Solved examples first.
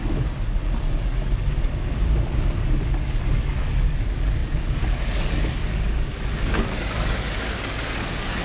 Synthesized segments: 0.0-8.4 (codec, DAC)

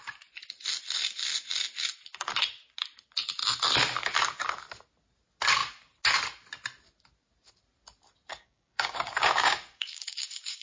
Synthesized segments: 8.3-10.6 (codec, DAC)

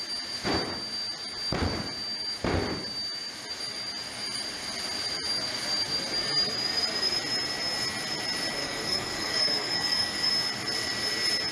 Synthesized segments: 8.6-10.3 (codec, DAC)

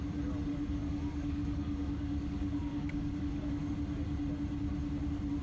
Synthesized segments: 0.5-3.7 (codec, DAC)

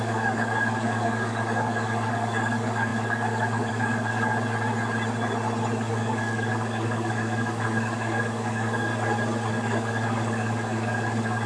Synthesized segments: 0.0-4.3 (codec, DAC); 5.9-8.9; 9.5-11.5

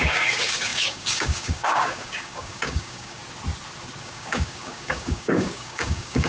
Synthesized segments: 0.0-3.2 (codec, DAC); 4.0-6.3

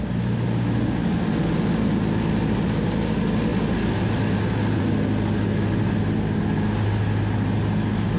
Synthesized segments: none

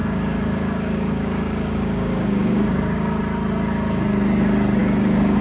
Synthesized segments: 0.0-3.2 (codec, DAC); 4.8-5.4